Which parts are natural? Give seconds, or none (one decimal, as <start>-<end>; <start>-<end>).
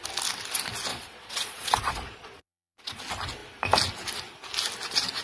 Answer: 0.0-0.9; 3.0-5.2